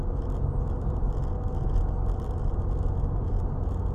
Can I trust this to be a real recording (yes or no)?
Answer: yes